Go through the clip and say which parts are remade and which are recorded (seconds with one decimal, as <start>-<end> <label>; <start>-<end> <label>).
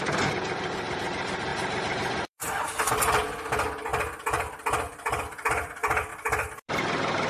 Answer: 0.0-1.5 recorded; 1.5-2.8 remade; 2.8-6.1 recorded; 6.1-6.7 remade; 6.7-7.3 recorded